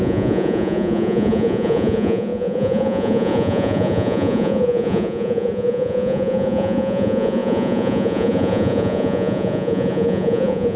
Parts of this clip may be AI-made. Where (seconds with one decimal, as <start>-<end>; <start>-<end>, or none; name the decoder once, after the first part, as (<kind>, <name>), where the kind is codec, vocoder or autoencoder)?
0.0-10.8 (vocoder, Vocos)